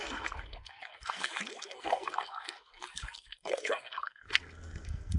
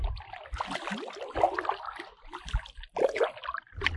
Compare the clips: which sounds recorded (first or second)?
second